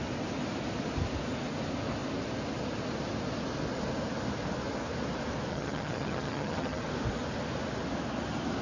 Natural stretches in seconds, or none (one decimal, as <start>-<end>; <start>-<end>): 0.0-5.5; 6.8-8.6